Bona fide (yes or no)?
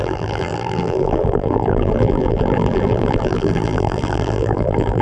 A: no